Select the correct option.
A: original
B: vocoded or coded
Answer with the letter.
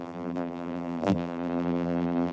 B